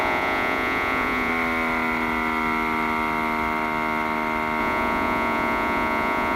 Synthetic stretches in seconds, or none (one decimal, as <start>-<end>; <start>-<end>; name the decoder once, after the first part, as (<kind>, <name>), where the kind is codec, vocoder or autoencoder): 0.0-1.3 (vocoder, Vocos); 4.6-6.4